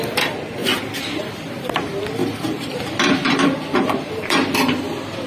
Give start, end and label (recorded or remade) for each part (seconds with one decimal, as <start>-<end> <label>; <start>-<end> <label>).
0.0-2.2 recorded; 2.2-4.4 remade; 4.4-5.3 recorded

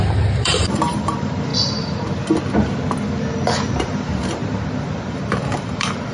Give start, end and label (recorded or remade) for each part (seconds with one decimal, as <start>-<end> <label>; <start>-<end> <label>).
0.0-1.5 remade; 1.5-3.8 recorded; 3.8-4.4 remade; 4.4-5.1 recorded; 5.1-6.1 remade

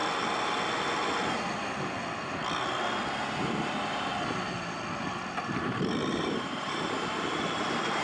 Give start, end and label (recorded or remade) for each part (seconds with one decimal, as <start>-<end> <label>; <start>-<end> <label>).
0.0-3.2 recorded; 3.2-4.1 remade; 4.1-5.4 recorded; 5.4-8.0 remade

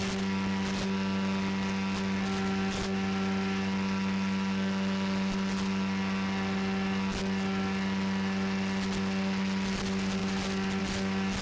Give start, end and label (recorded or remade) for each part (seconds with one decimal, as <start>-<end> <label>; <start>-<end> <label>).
0.0-11.4 recorded

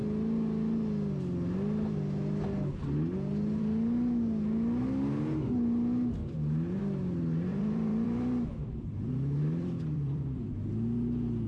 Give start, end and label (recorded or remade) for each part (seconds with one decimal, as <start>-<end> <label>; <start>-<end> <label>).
0.0-6.2 recorded; 6.2-6.8 remade; 6.8-7.5 recorded; 7.5-10.4 remade; 10.4-11.5 recorded

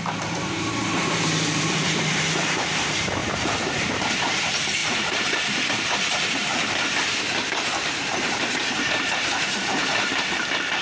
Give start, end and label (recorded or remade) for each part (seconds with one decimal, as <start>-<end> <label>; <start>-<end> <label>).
0.0-10.8 remade

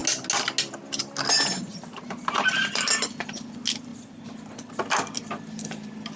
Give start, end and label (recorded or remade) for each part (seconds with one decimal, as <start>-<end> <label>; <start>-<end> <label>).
0.0-1.5 recorded; 1.5-3.3 remade; 3.3-3.9 recorded; 3.9-6.2 remade